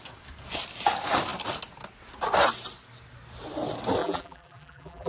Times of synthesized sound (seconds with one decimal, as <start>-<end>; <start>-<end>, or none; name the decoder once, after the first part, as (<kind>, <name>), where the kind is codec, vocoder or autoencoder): 4.0-5.1 (vocoder, BigVGAN v2)